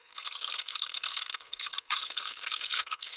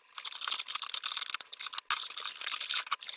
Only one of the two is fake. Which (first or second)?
first